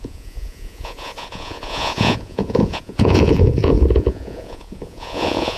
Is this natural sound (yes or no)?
no